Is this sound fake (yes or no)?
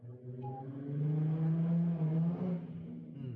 no